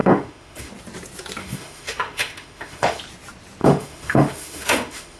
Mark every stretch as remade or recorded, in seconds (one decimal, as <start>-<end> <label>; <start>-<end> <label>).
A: 0.0-0.7 remade; 0.7-1.4 recorded; 1.4-3.0 remade; 3.0-3.6 recorded; 3.6-5.2 remade